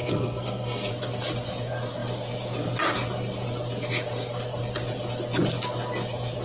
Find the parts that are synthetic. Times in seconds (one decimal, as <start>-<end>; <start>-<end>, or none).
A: 0.0-0.9